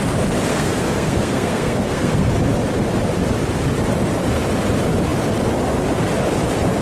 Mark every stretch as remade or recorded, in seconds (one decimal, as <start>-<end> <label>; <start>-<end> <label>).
0.0-0.5 recorded; 0.5-2.3 remade; 2.3-6.8 recorded